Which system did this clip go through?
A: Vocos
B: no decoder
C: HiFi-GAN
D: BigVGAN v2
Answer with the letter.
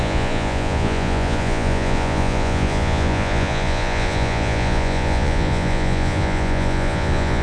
A